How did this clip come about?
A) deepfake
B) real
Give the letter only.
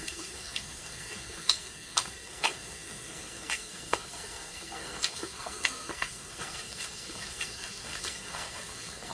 A